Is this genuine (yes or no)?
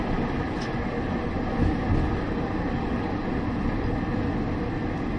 yes